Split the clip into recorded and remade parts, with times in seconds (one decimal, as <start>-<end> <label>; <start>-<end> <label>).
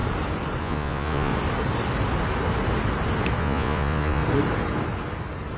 0.0-0.6 recorded; 0.6-1.3 remade; 1.3-3.4 recorded; 3.4-4.2 remade; 4.2-5.6 recorded